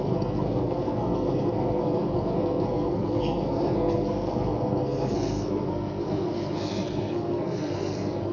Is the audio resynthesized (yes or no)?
yes